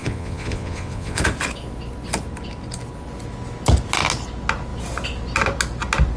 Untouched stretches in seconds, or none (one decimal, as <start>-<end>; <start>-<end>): 1.2-6.2